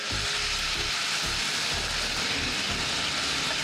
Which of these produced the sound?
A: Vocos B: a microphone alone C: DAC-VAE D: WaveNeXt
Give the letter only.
B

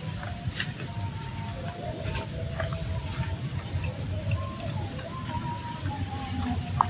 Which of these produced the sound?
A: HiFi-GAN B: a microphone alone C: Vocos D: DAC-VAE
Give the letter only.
B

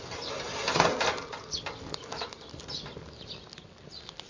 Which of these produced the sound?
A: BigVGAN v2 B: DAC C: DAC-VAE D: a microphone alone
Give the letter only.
D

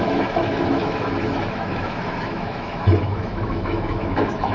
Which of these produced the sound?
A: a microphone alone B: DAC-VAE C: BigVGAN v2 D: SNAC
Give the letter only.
B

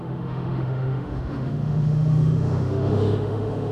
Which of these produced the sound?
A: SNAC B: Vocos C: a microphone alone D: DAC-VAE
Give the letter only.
D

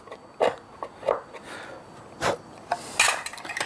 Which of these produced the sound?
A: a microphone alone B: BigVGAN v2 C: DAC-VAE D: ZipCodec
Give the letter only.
A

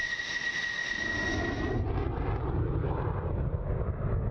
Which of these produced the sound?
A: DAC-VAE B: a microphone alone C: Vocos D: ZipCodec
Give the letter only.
B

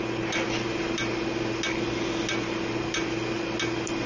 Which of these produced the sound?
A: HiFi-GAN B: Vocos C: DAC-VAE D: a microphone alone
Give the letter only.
D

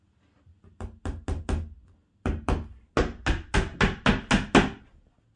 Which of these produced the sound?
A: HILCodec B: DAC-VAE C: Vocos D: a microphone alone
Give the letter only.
D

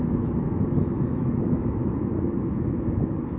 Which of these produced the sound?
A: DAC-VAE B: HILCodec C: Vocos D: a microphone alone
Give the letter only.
A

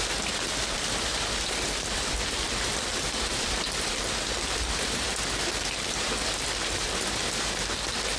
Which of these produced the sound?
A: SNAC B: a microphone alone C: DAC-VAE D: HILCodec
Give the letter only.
B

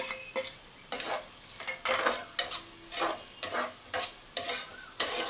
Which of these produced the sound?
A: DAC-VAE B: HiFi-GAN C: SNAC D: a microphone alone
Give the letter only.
D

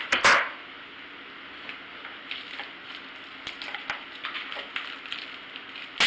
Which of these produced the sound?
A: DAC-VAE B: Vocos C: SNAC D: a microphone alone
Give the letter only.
D